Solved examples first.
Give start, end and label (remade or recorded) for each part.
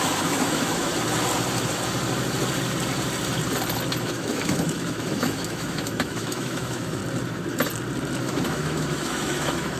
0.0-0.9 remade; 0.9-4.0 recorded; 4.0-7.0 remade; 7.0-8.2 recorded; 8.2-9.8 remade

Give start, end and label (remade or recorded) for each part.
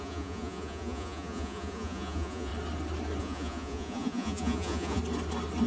0.0-2.5 remade; 2.5-3.2 recorded; 3.2-5.0 remade; 5.0-5.7 recorded